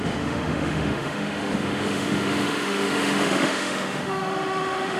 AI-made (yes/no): yes